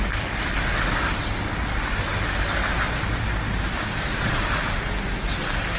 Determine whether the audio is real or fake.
real